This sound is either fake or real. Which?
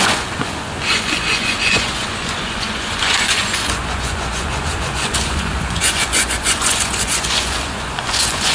fake